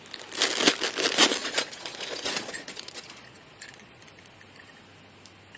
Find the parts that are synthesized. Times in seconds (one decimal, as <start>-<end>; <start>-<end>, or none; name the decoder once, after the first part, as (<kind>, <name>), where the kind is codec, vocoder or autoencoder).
1.4-4.0 (vocoder, Vocos)

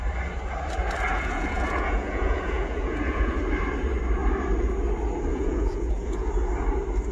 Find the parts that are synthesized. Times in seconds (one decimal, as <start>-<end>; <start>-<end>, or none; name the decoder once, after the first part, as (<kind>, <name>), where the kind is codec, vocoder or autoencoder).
1.1-3.4 (vocoder, Vocos); 5.3-6.3